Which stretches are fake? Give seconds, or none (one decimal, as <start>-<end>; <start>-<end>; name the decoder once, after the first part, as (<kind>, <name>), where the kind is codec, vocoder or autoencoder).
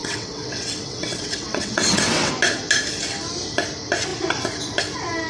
0.0-2.3 (vocoder, WaveNeXt)